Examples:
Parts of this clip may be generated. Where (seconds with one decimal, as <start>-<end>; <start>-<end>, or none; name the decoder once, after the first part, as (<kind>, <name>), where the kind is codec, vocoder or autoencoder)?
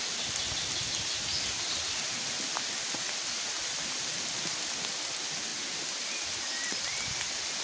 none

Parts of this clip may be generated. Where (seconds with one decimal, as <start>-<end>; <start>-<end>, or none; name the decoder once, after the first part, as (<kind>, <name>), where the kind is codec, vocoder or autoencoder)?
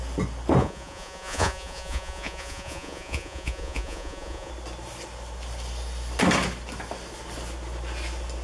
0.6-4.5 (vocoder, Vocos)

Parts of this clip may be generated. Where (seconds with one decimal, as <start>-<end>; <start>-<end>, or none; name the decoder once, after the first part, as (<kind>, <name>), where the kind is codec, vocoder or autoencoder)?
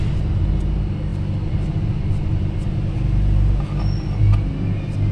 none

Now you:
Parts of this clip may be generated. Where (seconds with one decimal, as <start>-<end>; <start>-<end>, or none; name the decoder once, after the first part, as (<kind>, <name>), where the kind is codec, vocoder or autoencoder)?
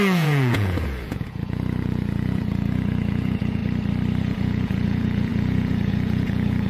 0.0-3.6 (vocoder, Vocos); 4.2-6.7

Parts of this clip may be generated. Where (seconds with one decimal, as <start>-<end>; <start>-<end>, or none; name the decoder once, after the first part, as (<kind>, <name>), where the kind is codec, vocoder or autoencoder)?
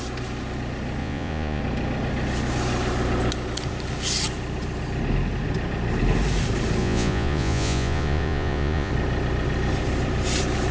1.0-1.6 (vocoder, Vocos); 6.8-8.9